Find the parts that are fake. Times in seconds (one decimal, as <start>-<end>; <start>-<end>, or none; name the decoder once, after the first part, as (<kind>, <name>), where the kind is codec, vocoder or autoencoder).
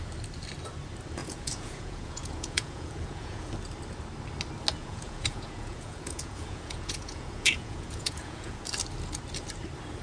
1.2-3.5 (vocoder, Vocos); 4.8-8.6